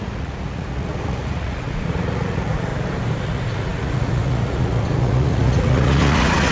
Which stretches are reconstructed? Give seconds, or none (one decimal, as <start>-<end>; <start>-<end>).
0.0-2.7; 3.2-6.5